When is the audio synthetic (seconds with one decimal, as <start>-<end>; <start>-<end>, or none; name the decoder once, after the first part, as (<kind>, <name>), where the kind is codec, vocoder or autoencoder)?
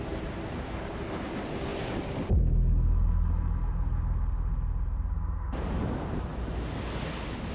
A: 0.0-1.7 (vocoder, BigVGAN v2); 5.6-6.3